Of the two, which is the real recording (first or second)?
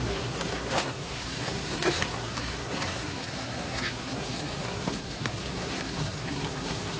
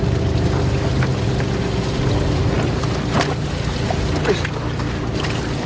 second